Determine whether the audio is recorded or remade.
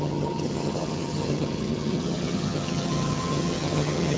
remade